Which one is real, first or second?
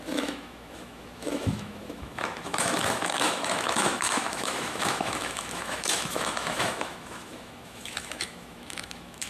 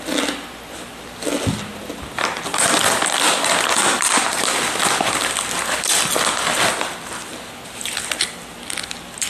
second